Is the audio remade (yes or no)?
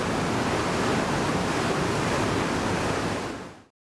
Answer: no